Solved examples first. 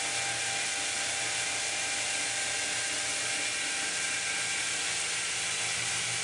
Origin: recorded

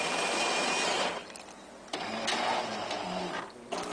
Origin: recorded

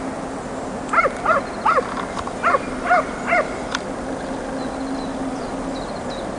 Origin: recorded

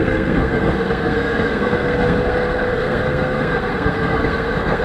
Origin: remade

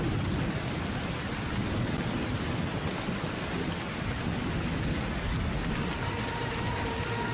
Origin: recorded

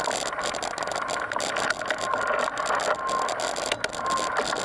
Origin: recorded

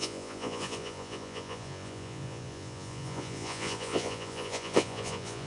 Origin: remade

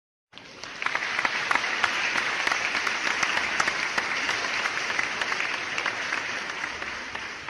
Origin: recorded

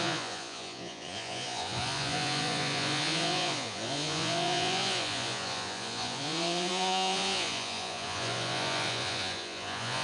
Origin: remade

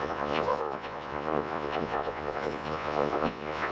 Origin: remade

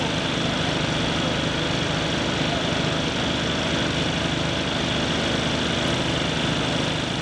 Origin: recorded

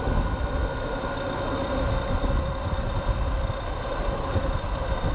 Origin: recorded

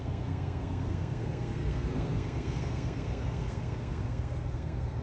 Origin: remade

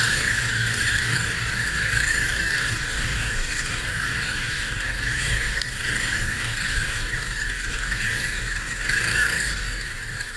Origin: remade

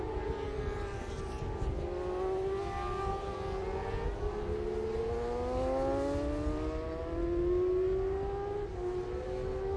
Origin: recorded